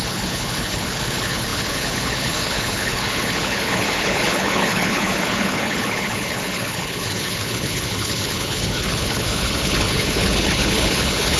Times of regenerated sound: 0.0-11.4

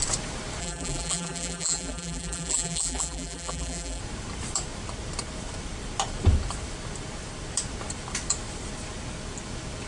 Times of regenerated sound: 0.6-4.0

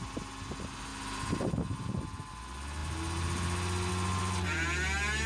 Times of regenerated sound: none

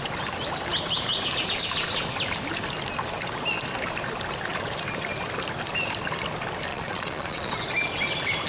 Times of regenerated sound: 6.7-7.5